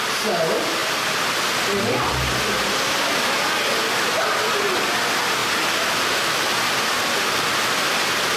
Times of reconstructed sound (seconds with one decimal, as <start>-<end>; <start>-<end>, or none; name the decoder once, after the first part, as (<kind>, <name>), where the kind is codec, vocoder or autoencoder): 5.4-7.5 (vocoder, BigVGAN v2)

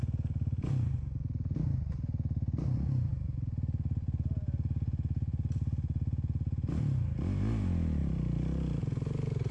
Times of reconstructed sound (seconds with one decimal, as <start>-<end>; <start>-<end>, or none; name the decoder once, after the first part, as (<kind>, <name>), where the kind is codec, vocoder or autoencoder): 8.0-8.8 (vocoder, BigVGAN v2)

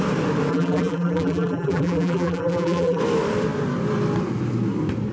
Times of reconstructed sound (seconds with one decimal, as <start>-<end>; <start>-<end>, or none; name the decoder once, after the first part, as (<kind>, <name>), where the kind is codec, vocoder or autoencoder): 0.5-3.0 (vocoder, BigVGAN v2)

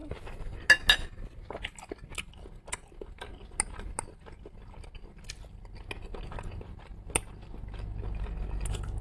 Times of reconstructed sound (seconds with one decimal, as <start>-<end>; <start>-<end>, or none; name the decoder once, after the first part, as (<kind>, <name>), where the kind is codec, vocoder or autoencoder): none